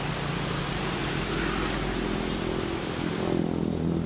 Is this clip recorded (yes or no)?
yes